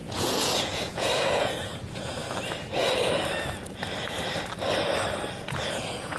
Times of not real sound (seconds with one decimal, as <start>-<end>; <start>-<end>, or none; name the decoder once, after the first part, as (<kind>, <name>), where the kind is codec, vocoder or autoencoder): 0.0-2.2 (vocoder, Vocos); 5.3-6.2